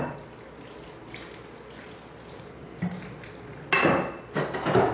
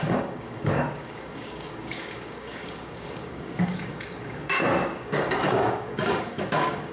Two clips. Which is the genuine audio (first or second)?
first